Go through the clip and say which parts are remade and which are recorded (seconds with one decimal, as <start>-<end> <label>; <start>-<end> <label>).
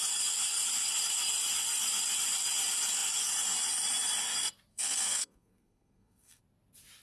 0.0-4.7 recorded; 4.7-6.4 remade; 6.4-7.0 recorded